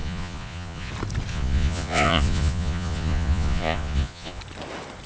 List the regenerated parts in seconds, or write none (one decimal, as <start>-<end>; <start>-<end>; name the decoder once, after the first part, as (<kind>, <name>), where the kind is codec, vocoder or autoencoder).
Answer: 0.0-0.9 (vocoder, Vocos); 1.3-4.4